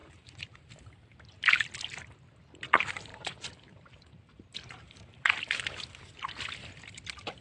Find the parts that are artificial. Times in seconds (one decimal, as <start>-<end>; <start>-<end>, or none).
0.0-0.7; 3.1-6.1